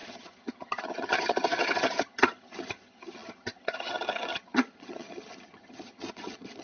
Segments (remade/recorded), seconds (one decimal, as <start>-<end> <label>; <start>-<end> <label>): 0.0-6.6 remade